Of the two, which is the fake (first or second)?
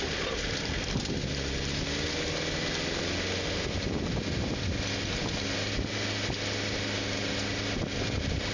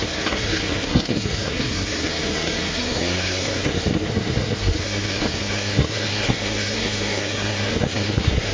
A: second